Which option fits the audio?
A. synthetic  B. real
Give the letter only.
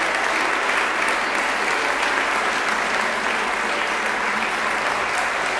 B